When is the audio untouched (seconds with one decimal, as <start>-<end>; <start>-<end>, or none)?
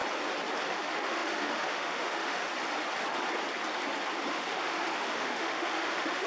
0.0-0.7; 2.4-4.3